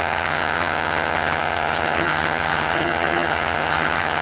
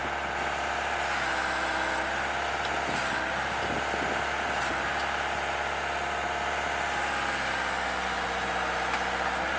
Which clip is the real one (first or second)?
second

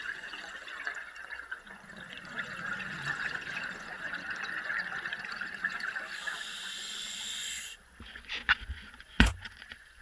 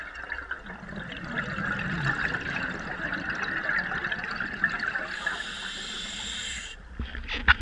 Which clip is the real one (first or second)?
second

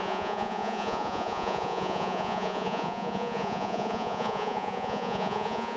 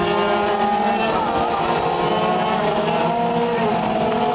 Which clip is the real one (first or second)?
second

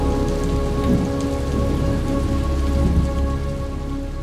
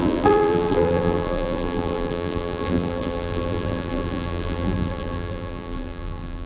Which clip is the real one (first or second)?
first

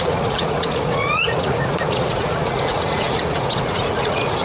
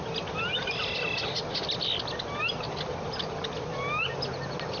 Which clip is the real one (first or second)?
second